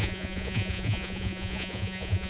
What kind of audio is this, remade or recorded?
remade